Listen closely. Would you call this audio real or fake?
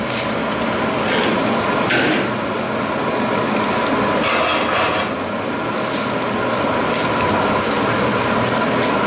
real